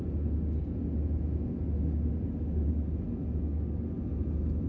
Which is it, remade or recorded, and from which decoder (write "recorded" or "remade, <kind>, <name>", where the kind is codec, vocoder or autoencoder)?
recorded